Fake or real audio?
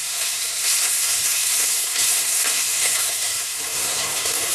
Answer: fake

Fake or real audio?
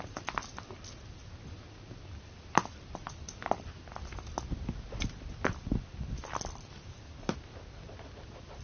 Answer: real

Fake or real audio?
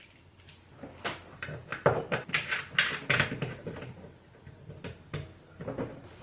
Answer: real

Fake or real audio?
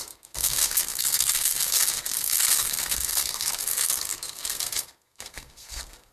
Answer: fake